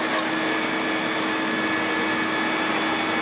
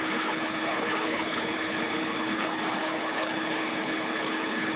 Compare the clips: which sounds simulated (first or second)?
second